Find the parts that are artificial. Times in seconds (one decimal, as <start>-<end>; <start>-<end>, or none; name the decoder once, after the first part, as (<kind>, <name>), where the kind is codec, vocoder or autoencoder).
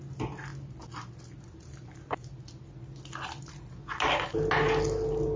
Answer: none